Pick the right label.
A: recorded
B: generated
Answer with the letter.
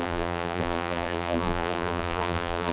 B